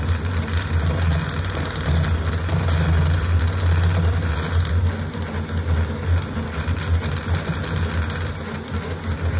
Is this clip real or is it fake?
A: real